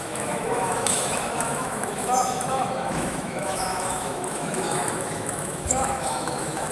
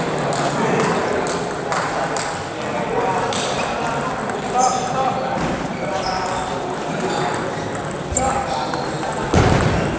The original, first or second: second